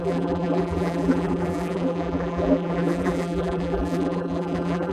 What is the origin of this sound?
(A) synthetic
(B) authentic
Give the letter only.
A